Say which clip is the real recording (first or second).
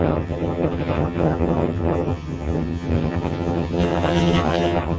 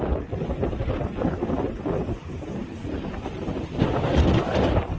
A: second